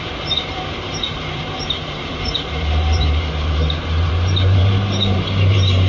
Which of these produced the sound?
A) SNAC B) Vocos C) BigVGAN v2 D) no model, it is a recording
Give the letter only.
C